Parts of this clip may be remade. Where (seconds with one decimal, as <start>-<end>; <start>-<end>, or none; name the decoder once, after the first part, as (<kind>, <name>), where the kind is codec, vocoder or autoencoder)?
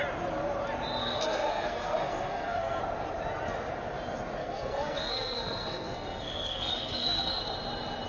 1.0-2.8 (codec, SNAC); 4.4-7.4